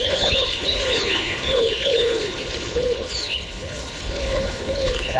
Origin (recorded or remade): remade